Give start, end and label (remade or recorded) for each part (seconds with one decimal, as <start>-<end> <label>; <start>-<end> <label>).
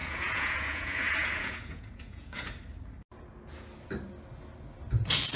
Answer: 0.0-2.5 remade; 2.5-5.4 recorded